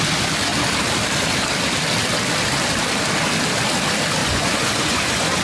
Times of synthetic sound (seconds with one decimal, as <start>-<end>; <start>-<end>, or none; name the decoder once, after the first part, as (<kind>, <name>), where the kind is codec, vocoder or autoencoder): 4.2-5.4 (vocoder, Vocos)

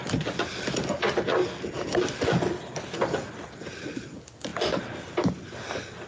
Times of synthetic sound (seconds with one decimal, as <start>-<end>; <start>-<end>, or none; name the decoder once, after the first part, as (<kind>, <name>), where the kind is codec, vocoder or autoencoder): none

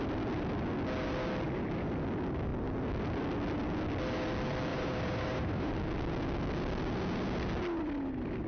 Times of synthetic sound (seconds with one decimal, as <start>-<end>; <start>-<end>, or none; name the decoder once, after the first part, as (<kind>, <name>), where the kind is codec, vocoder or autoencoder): 4.7-5.7 (vocoder, BigVGAN v2)

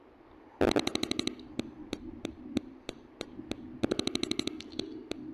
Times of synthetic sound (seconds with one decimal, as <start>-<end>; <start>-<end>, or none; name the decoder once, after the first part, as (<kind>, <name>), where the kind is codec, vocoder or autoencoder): 1.8-3.4 (vocoder, BigVGAN v2)

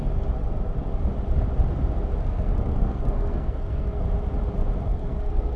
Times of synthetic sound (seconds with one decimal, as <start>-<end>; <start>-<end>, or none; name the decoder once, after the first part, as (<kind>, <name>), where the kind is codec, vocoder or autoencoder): 2.2-4.0 (codec, SNAC); 4.9-5.6

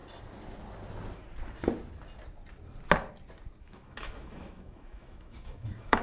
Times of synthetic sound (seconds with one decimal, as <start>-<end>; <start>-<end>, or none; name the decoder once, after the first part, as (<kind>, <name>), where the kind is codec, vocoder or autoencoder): 3.6-6.0 (autoencoder, DAC-VAE)